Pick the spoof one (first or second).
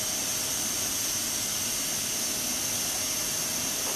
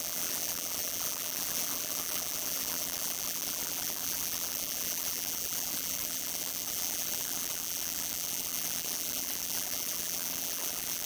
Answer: second